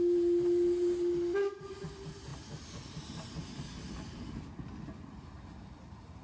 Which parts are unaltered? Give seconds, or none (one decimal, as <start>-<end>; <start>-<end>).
0.0-6.2